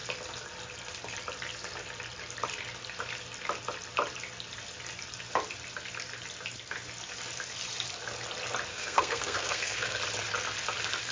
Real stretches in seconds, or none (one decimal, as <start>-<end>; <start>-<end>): 0.0-8.7; 10.0-11.1